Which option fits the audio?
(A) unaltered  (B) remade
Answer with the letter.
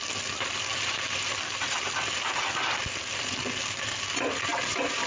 A